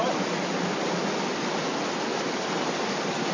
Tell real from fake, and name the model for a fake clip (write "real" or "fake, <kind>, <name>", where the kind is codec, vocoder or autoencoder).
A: real